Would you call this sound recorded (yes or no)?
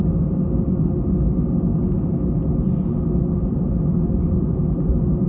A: yes